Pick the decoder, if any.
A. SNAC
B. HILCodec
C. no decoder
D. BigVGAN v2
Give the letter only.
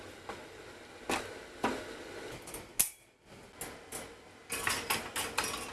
C